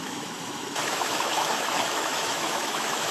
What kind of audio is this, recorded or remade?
remade